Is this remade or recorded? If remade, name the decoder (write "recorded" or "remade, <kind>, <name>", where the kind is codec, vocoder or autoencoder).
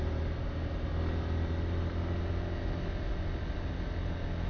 recorded